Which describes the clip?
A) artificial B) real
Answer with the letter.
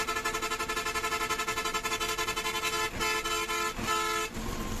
B